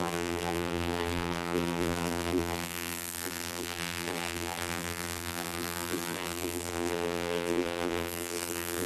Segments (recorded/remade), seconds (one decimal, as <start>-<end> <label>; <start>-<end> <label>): 0.0-8.9 remade